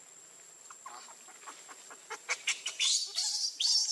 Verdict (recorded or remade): recorded